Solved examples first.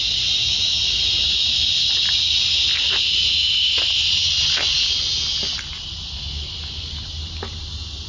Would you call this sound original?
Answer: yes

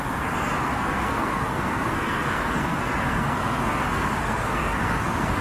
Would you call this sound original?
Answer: no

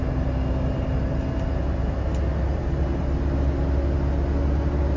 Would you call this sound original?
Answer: yes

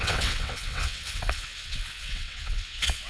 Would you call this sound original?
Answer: no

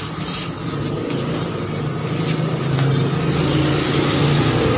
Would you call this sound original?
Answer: yes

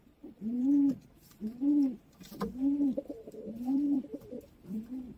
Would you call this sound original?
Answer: no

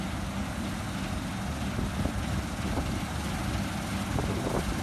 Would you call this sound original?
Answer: yes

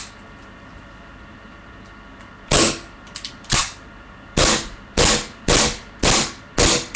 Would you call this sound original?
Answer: yes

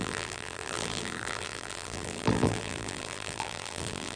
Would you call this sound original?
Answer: no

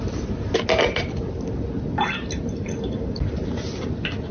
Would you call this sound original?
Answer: yes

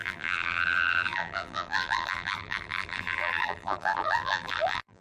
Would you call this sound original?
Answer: no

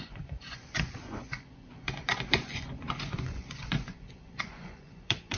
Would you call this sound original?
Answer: no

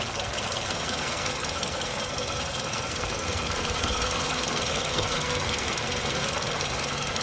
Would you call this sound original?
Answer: no